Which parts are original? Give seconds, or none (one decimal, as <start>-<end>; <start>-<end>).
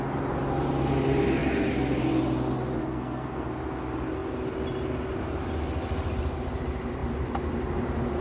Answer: 0.0-2.8; 3.5-8.2